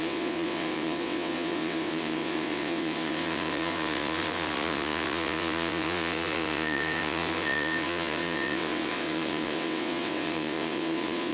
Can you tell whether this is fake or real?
fake